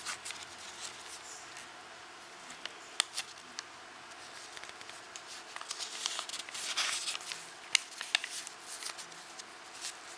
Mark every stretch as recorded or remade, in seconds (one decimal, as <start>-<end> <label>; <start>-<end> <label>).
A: 0.0-10.2 recorded